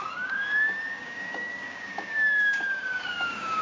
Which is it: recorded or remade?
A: remade